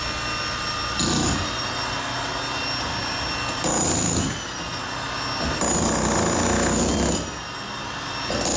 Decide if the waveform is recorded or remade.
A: recorded